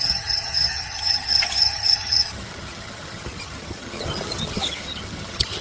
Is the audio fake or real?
fake